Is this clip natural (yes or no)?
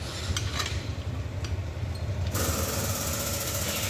yes